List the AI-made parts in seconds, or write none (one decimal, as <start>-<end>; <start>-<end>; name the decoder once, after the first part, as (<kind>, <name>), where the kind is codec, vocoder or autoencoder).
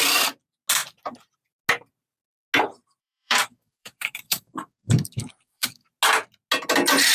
3.0-5.9 (codec, DAC)